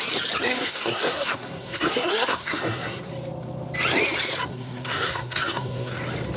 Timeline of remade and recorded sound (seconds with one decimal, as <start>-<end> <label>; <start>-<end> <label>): 0.0-0.5 recorded; 0.5-3.1 remade; 3.1-4.5 recorded; 4.5-5.9 remade; 5.9-6.4 recorded